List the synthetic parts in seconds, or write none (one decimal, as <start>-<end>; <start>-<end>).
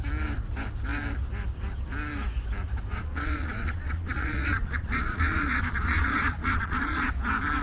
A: 2.9-7.1